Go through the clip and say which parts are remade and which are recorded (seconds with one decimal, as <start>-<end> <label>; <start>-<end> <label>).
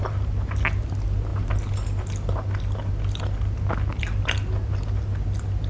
0.0-5.7 recorded